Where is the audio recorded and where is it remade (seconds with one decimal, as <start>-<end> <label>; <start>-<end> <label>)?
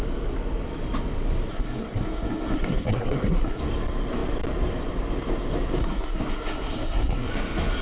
0.0-1.5 recorded; 1.5-3.6 remade; 3.6-5.8 recorded; 5.8-7.3 remade; 7.3-7.8 recorded